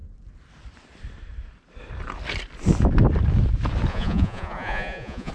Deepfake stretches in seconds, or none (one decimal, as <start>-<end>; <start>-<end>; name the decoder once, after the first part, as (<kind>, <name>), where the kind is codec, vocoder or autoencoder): 3.9-5.3 (vocoder, Vocos)